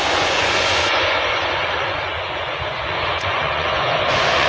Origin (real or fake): fake